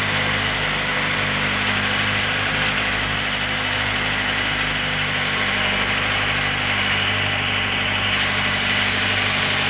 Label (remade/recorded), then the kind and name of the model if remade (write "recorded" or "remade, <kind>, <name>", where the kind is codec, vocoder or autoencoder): recorded